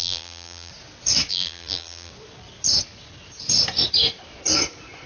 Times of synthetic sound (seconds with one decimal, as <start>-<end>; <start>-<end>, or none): 0.0-0.7; 1.3-2.1